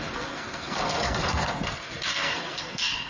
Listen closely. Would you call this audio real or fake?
fake